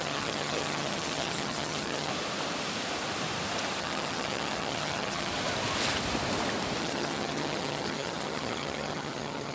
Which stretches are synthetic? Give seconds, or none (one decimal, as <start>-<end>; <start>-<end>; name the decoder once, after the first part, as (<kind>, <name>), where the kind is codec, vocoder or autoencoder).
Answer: 0.0-2.1 (vocoder, HiFi-GAN); 3.8-5.3; 6.8-9.5